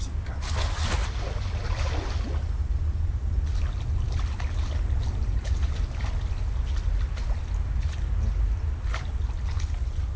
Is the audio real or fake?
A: real